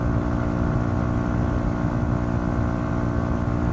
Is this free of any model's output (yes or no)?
yes